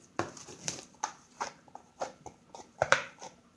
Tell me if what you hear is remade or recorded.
remade